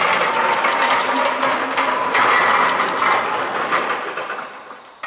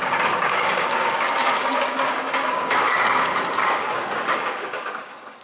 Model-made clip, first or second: second